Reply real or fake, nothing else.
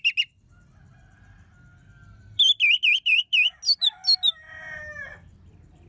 real